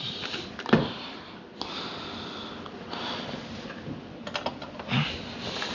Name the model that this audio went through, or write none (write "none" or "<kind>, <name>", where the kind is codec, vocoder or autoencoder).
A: none